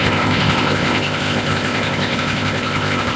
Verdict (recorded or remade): remade